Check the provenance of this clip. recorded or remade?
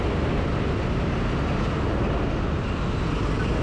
recorded